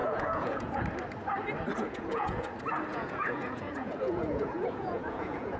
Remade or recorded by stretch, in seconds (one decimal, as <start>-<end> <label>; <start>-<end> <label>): 0.0-0.8 remade; 0.8-1.7 recorded; 1.7-2.5 remade; 2.5-2.9 recorded; 2.9-5.6 remade